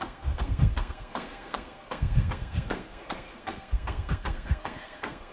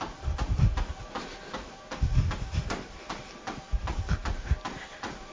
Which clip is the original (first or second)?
second